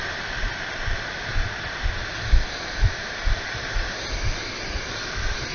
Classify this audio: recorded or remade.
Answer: recorded